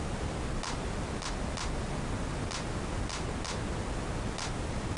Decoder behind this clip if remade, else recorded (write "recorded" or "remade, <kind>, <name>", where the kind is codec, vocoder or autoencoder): recorded